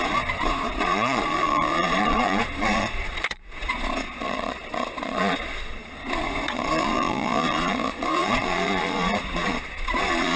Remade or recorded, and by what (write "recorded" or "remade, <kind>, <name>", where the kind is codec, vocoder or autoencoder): remade, vocoder, Vocos